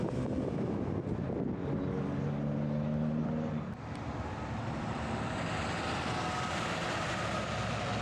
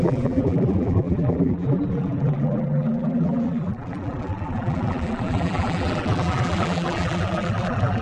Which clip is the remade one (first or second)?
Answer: second